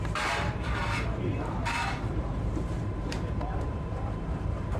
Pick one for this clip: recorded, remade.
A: remade